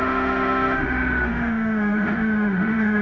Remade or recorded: remade